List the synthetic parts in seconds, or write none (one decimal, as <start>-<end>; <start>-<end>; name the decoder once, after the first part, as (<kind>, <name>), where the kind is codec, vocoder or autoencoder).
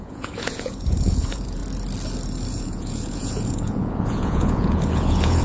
0.0-1.6 (vocoder, Vocos); 2.5-5.4